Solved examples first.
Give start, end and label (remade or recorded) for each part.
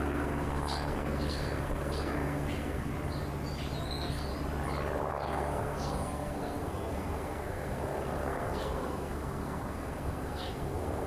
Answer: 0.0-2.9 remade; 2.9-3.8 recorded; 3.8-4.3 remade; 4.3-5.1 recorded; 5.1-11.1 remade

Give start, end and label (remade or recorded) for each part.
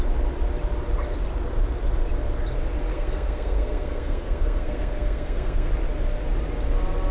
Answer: 0.0-2.9 recorded; 2.9-5.7 remade; 5.7-7.1 recorded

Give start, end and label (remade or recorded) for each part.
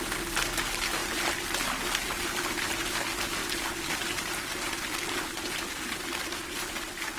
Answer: 0.0-7.2 recorded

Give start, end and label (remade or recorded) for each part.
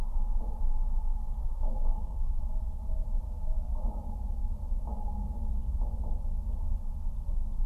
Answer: 0.0-1.4 recorded; 1.4-2.4 remade; 2.4-7.7 recorded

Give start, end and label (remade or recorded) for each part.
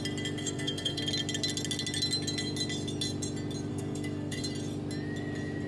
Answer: 0.0-0.4 recorded; 0.4-1.0 remade; 1.0-3.7 recorded; 3.7-4.4 remade; 4.4-5.7 recorded